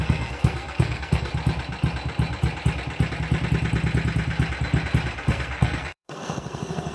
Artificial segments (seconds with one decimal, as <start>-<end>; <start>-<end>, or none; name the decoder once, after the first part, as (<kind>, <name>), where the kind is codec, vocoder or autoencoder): 0.0-1.3 (codec, SNAC); 5.2-6.9